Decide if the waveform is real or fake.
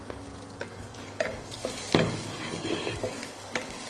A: fake